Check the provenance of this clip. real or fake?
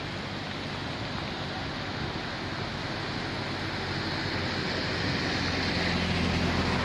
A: real